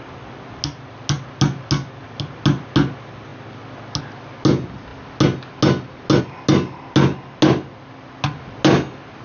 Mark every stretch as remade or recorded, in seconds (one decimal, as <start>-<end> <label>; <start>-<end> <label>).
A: 0.0-9.2 recorded